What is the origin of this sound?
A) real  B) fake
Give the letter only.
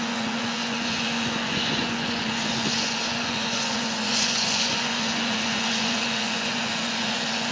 B